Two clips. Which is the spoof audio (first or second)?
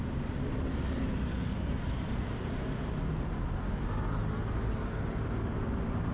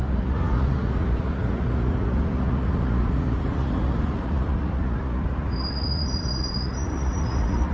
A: second